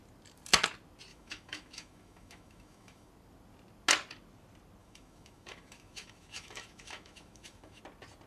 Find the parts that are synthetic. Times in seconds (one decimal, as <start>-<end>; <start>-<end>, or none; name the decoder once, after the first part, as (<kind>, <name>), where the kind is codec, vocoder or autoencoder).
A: 1.1-3.1 (autoencoder, DAC-VAE); 4.8-7.8